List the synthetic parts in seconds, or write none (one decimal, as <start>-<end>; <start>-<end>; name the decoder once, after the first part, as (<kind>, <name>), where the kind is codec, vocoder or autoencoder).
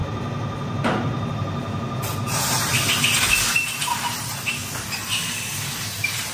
1.3-2.7 (vocoder, BigVGAN v2); 3.7-4.6; 5.8-6.3